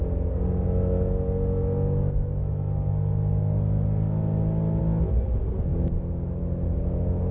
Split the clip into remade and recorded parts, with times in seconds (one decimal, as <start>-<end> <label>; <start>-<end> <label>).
0.0-7.3 recorded